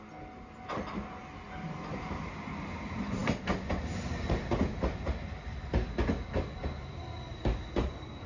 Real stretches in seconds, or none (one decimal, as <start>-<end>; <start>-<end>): 0.0-8.3